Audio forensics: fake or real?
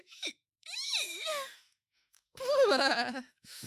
fake